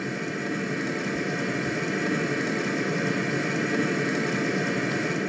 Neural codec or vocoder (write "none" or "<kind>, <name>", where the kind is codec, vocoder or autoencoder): none